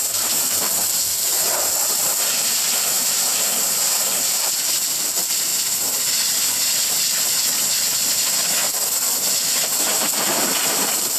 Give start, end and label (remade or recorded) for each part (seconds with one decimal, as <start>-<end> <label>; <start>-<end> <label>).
0.0-5.5 remade; 5.5-9.3 recorded; 9.3-11.2 remade